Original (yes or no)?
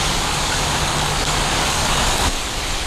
no